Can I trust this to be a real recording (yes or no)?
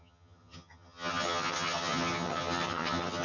no